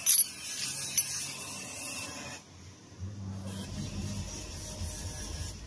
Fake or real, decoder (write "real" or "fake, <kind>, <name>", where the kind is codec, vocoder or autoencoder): real